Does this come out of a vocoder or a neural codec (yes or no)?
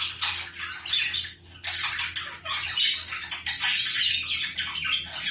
no